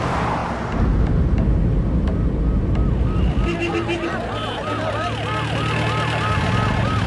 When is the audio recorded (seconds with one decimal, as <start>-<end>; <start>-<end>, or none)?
0.0-7.1